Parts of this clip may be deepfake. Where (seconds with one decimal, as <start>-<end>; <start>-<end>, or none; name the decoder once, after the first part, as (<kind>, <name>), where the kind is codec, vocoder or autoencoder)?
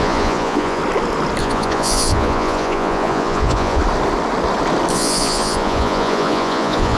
0.0-0.8 (vocoder, Vocos); 1.4-3.8; 4.9-7.0